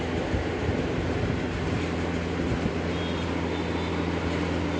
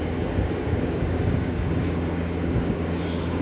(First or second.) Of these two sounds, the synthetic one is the second